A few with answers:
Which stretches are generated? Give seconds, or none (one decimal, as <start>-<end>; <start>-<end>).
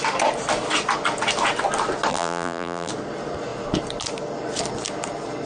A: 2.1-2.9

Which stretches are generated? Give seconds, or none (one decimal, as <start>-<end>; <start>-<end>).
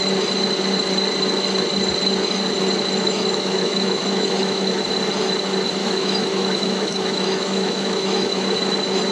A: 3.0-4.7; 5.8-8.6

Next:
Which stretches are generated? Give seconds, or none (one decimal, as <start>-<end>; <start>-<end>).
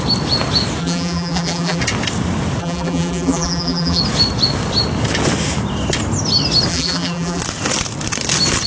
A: 0.8-1.8; 2.6-4.0; 6.7-7.4